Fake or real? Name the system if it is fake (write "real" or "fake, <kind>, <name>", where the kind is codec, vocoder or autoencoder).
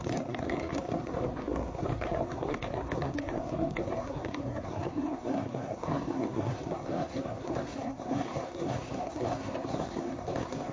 fake, codec, SNAC